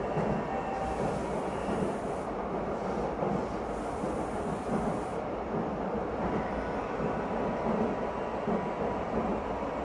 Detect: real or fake real